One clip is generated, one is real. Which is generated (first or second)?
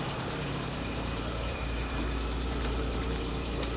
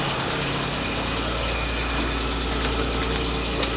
first